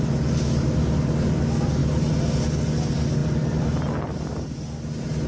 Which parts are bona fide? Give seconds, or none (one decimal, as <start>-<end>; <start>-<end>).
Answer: 0.0-5.3